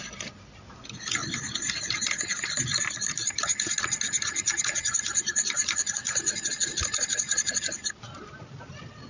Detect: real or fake real